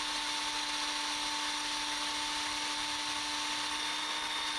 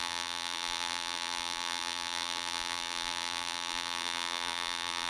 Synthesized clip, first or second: second